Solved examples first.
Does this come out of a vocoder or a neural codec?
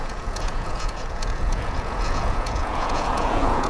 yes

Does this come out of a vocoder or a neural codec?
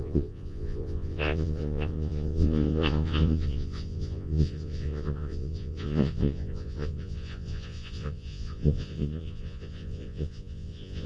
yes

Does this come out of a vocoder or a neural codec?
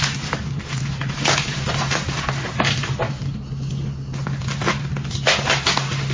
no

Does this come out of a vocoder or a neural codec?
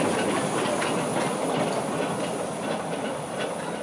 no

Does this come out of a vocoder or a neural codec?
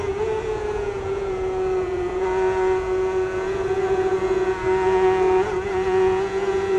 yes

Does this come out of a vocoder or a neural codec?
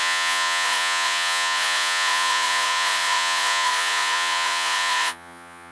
yes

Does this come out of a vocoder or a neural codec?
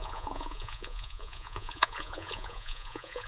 yes